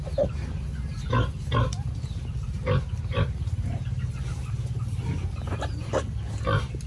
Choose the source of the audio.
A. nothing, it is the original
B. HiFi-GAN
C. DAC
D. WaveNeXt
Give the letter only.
A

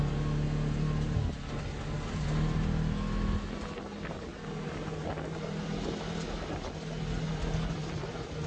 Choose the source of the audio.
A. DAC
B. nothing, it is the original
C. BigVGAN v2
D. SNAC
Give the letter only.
B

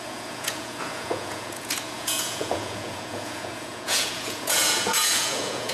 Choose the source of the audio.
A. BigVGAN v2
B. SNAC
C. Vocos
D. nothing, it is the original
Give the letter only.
C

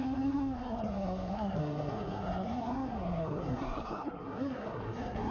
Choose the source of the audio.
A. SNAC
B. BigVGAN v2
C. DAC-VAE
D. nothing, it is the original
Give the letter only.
A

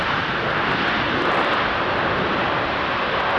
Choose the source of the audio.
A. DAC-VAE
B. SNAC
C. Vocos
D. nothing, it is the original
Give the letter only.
D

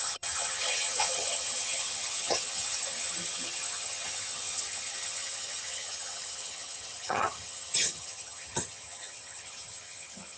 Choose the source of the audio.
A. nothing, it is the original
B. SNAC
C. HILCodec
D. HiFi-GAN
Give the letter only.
D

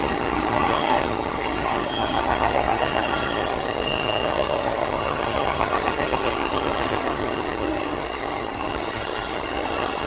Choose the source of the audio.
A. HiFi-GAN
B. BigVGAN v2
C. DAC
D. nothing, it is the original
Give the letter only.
A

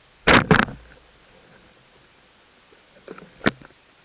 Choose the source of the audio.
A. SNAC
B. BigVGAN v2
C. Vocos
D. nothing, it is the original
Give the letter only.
D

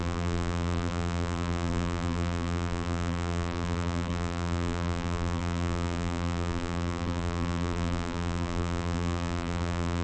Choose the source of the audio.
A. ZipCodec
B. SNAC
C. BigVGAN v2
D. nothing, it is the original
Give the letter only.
C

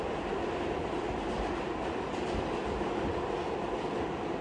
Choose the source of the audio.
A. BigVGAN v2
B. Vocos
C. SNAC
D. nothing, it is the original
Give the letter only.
D